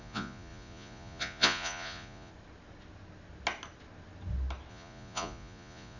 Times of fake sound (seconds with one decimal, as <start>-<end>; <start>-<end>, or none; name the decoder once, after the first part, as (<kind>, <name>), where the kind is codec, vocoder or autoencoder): 0.0-2.3 (vocoder, Vocos); 4.7-6.0